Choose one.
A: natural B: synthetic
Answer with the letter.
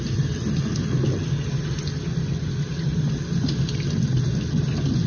A